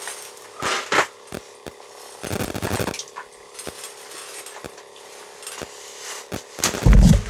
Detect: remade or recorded recorded